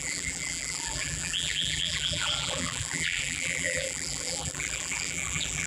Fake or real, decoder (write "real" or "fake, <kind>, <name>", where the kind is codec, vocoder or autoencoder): fake, vocoder, BigVGAN v2